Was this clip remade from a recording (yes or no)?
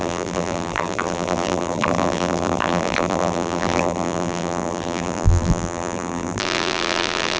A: yes